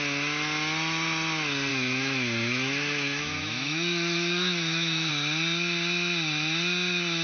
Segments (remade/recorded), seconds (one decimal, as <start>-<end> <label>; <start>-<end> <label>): 0.0-1.7 recorded; 1.7-5.1 remade; 5.1-7.2 recorded